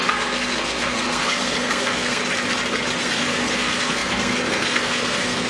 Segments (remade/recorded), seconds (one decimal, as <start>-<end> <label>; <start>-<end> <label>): 0.0-2.2 remade; 2.2-3.0 recorded; 3.0-5.5 remade